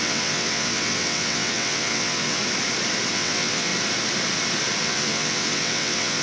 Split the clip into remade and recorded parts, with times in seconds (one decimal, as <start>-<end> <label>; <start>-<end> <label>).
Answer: 0.0-2.4 remade; 2.4-3.1 recorded; 3.1-3.7 remade; 3.7-4.8 recorded; 4.8-6.2 remade